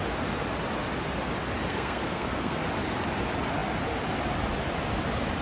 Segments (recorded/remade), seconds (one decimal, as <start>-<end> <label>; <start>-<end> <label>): 0.0-1.7 recorded; 1.7-2.6 remade; 2.6-5.4 recorded